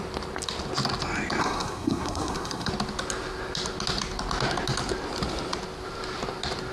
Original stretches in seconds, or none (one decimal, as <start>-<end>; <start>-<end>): 0.0-1.4; 2.7-6.7